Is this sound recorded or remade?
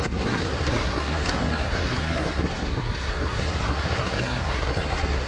remade